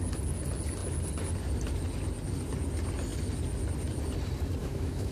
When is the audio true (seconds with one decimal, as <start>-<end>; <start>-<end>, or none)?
0.0-4.6